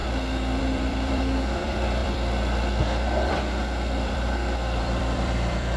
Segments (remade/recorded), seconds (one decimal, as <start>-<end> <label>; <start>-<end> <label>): 0.0-0.6 recorded; 0.6-5.8 remade